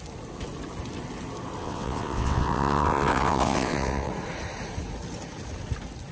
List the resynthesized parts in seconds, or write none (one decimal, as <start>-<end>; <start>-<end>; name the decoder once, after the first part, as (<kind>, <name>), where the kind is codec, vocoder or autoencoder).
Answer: 1.6-4.1 (vocoder, WaveNeXt)